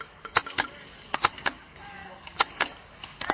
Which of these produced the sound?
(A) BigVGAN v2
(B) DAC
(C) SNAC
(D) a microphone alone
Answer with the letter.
B